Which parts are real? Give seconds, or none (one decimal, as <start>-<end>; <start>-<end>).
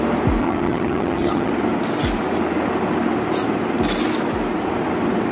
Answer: 0.0-0.4; 1.5-5.3